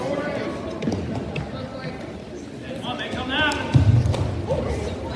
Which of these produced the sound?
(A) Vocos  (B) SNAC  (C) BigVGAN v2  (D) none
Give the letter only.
D